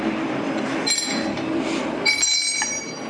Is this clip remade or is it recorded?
remade